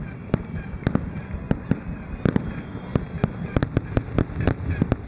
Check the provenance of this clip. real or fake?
real